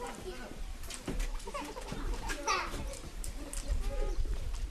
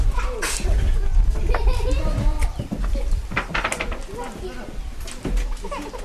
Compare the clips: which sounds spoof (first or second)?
first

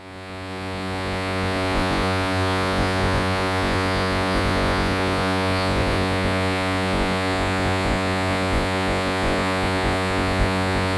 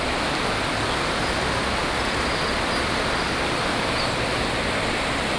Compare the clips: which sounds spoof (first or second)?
first